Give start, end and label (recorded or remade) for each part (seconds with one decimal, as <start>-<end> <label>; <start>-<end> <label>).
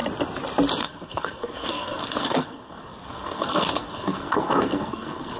0.0-0.8 recorded; 0.8-5.4 remade